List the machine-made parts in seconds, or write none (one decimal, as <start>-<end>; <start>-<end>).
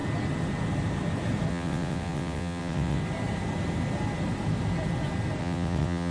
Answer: 1.5-3.0; 5.4-6.1